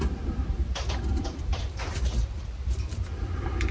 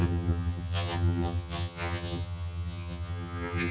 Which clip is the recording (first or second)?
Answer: first